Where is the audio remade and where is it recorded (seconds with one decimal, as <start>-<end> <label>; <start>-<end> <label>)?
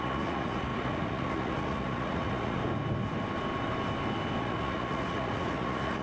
0.0-2.6 remade; 2.6-4.4 recorded; 4.4-6.0 remade